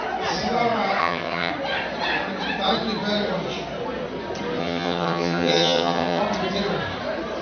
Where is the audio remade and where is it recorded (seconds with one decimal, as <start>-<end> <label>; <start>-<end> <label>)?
0.0-1.0 recorded; 1.0-1.5 remade; 1.5-4.6 recorded; 4.6-6.2 remade; 6.2-7.4 recorded